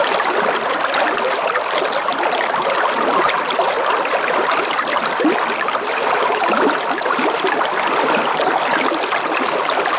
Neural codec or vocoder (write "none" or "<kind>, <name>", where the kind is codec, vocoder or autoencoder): none